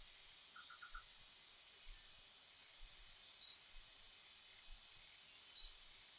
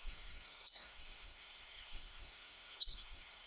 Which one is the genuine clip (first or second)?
first